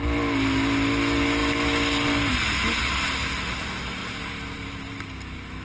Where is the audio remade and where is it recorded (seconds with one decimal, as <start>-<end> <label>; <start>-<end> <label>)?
0.0-5.6 recorded